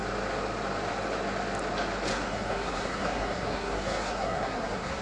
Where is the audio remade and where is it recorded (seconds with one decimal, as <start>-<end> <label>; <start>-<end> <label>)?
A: 0.0-2.1 recorded; 2.1-5.0 remade